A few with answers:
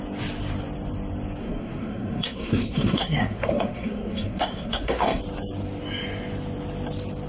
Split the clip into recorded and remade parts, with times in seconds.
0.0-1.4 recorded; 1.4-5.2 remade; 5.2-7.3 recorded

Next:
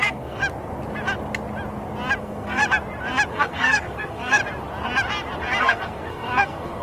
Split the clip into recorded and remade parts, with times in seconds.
0.0-0.4 remade; 0.4-2.2 recorded; 2.2-2.6 remade; 2.6-3.3 recorded; 3.3-4.4 remade; 4.4-5.6 recorded; 5.6-6.8 remade

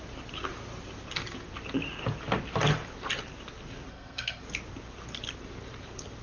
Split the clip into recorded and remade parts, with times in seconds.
0.0-3.9 recorded; 3.9-4.4 remade; 4.4-6.2 recorded

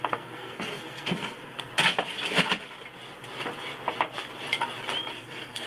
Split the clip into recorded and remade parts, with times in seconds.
0.0-1.7 remade; 1.7-5.1 recorded; 5.1-5.7 remade

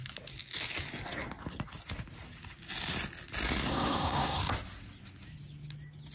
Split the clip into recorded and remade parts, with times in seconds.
0.0-3.7 recorded; 3.7-4.4 remade; 4.4-6.1 recorded

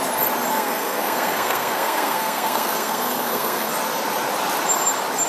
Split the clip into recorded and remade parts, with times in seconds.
0.0-0.5 recorded; 0.5-3.7 remade; 3.7-5.3 recorded